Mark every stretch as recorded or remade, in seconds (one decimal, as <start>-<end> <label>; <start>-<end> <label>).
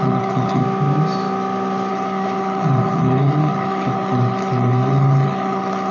0.0-0.6 remade; 0.6-1.9 recorded; 1.9-5.9 remade